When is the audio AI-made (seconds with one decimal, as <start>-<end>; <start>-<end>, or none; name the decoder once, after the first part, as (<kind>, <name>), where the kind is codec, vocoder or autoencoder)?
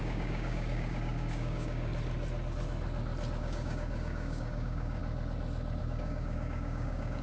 0.0-1.9 (codec, DAC); 3.4-5.0; 5.8-7.2